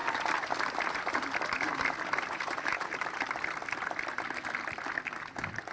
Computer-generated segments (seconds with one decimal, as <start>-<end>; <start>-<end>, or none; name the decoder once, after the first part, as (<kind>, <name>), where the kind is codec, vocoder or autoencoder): 0.0-3.4 (vocoder, BigVGAN v2)